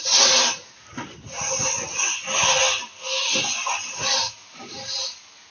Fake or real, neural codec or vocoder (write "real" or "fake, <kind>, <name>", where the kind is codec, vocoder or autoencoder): real